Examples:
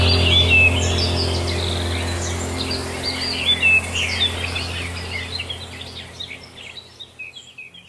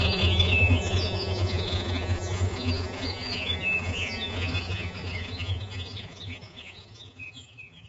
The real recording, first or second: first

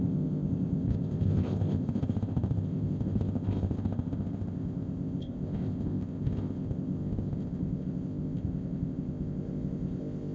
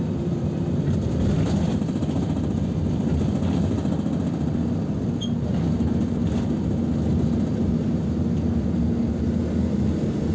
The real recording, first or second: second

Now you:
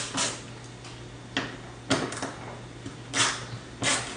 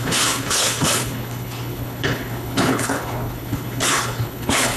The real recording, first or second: first